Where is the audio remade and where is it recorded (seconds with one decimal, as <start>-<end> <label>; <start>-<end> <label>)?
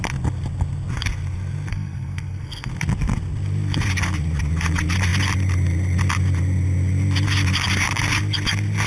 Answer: 0.0-1.7 recorded; 1.7-2.7 remade; 2.7-8.9 recorded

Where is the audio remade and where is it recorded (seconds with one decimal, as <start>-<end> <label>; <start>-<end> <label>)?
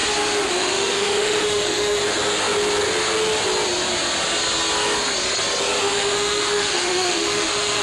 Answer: 0.0-0.5 recorded; 0.5-2.0 remade; 2.0-5.8 recorded; 5.8-7.8 remade